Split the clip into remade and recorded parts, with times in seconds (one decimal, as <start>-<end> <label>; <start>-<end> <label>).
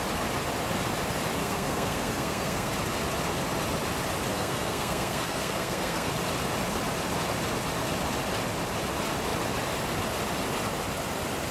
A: 0.0-1.4 recorded; 1.4-2.7 remade; 2.7-4.3 recorded; 4.3-6.1 remade; 6.1-11.5 recorded